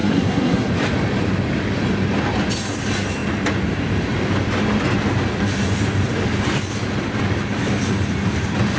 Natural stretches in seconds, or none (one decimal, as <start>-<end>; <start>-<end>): 0.7-8.8

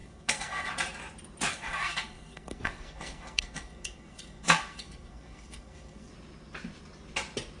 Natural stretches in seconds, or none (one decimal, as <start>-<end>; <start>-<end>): 0.7-1.5; 6.1-7.6

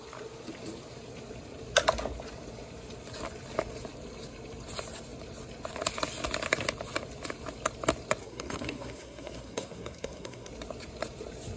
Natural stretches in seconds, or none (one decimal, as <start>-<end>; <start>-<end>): 0.0-8.2; 10.5-11.6